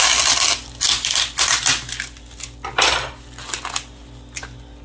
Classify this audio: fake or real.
real